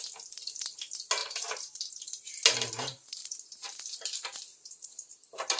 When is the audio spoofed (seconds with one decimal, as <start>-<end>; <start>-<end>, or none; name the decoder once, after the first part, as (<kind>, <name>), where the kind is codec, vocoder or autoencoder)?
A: 1.2-2.3 (vocoder, BigVGAN v2); 3.2-3.8; 4.5-5.1